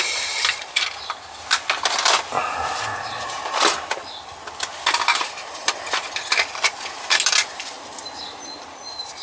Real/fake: real